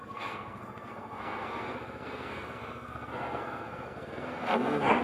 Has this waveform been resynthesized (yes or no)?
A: yes